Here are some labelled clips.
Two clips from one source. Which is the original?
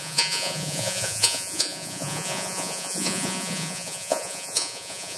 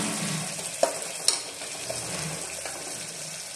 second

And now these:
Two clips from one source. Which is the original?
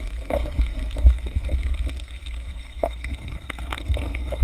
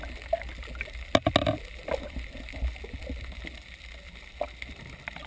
second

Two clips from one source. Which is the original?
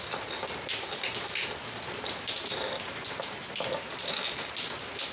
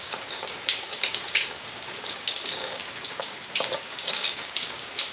first